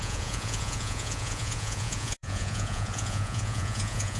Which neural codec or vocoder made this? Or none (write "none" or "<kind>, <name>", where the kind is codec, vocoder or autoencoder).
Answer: vocoder, Vocos